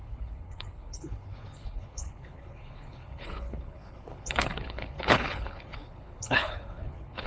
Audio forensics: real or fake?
fake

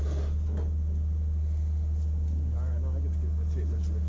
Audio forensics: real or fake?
real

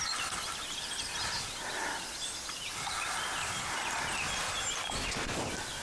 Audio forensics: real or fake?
real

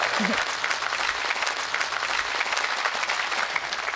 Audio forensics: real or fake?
real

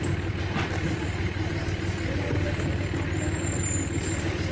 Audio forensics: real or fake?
real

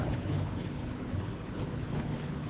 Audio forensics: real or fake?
fake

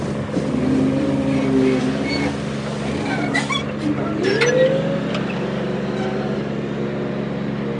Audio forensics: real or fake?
real